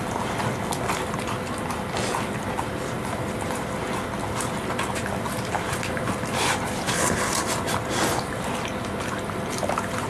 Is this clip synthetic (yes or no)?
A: no